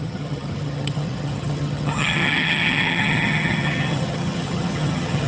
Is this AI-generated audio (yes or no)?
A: yes